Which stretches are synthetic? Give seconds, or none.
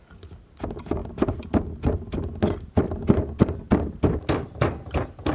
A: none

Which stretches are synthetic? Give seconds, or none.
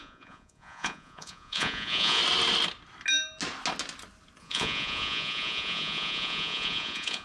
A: 0.0-2.2 (vocoder, Vocos); 4.4-7.2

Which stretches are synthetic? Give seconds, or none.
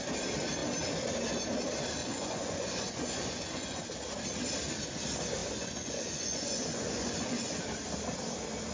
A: 2.0-3.8 (vocoder, Vocos); 5.4-7.6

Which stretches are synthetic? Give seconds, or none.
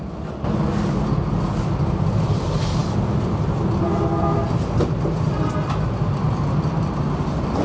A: none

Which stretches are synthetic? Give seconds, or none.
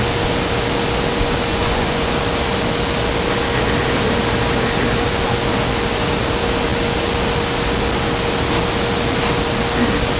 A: 1.5-2.1 (vocoder, Vocos)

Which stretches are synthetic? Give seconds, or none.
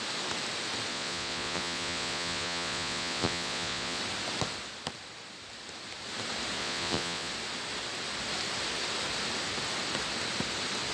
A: 0.9-4.0 (vocoder, Vocos); 6.6-7.3